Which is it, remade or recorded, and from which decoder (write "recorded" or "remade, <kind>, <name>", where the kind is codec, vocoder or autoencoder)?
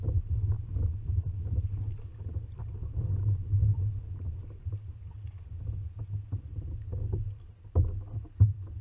recorded